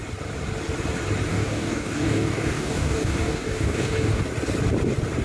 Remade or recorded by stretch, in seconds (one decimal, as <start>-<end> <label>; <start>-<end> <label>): 0.0-1.3 recorded; 1.3-4.2 remade; 4.2-5.2 recorded